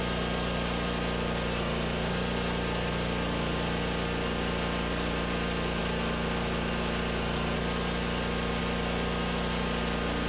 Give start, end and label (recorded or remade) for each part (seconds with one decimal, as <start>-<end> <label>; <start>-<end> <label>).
0.0-10.3 recorded